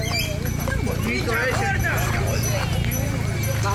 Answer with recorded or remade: recorded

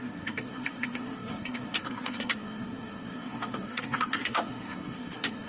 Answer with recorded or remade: remade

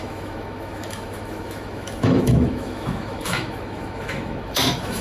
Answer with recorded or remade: remade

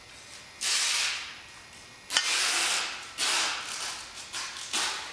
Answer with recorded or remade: recorded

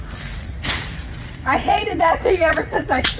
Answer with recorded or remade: remade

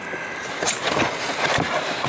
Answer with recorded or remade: recorded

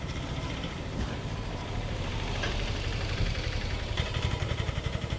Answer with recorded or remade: remade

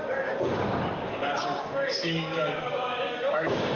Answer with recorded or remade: remade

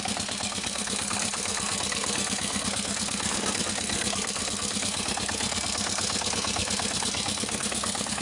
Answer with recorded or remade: remade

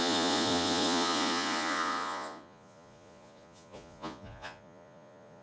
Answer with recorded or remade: remade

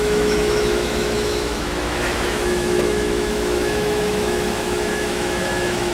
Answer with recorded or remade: remade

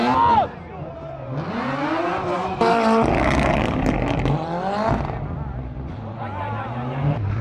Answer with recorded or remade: recorded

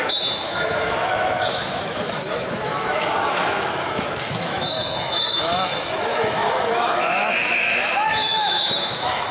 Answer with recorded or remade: remade